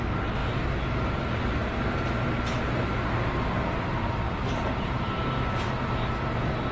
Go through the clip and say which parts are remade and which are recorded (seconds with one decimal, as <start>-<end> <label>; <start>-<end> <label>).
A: 0.0-6.7 recorded